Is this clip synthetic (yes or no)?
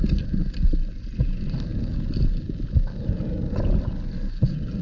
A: no